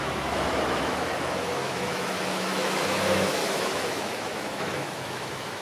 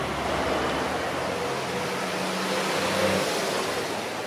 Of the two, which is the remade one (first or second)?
first